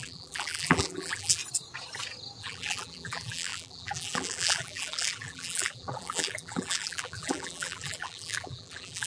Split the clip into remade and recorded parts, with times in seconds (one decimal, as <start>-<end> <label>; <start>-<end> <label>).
0.0-1.4 remade; 1.4-2.4 recorded; 2.4-9.1 remade